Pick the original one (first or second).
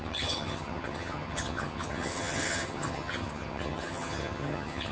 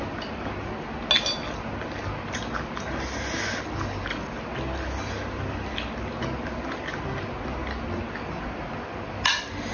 second